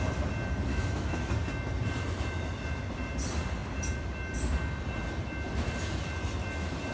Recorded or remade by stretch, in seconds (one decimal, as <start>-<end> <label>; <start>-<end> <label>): 0.0-0.7 recorded; 0.7-1.3 remade; 1.3-6.9 recorded